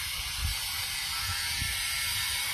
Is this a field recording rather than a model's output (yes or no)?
yes